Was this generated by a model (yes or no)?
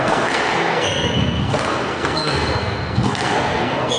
yes